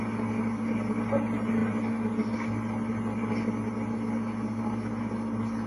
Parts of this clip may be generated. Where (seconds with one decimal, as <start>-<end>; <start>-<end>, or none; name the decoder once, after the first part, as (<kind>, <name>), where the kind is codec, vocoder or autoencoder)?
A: none